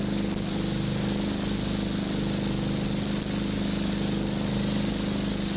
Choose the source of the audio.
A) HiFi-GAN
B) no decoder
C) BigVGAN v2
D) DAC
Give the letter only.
B